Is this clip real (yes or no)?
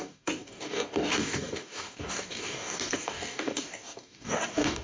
no